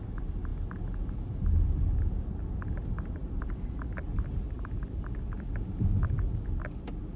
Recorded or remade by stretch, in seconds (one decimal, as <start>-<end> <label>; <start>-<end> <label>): 0.0-7.2 recorded